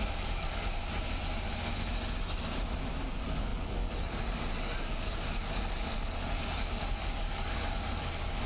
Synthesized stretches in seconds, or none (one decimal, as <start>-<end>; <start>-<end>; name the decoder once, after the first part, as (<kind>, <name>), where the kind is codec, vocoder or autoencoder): 0.0-0.8 (codec, DAC); 3.0-8.5